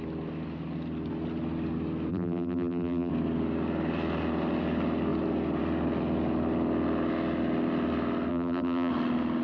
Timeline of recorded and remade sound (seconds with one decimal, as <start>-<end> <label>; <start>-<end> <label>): 0.0-2.1 recorded; 2.1-3.1 remade; 3.1-8.3 recorded; 8.3-8.9 remade; 8.9-9.4 recorded